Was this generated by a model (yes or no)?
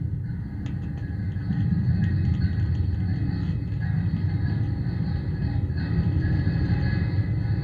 no